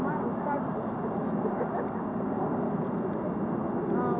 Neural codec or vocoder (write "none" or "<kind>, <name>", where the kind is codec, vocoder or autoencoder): none